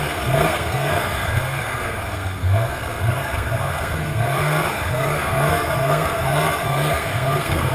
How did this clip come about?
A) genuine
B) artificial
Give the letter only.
B